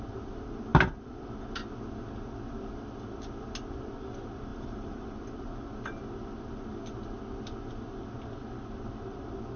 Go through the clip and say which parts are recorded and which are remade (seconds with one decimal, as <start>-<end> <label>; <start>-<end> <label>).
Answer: 0.0-0.7 recorded; 0.7-1.3 remade; 1.3-4.5 recorded; 4.5-5.1 remade; 5.1-9.6 recorded